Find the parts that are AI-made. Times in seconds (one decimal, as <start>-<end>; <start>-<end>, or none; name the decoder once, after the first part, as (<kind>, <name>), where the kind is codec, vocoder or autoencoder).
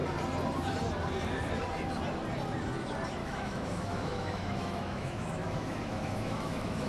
3.2-6.9 (autoencoder, DAC-VAE)